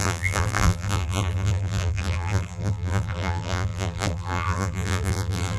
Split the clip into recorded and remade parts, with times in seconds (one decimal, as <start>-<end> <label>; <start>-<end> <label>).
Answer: 0.0-5.6 remade